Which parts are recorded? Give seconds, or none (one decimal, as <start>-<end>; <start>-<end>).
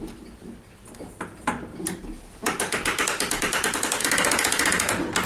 0.0-1.7; 4.0-5.3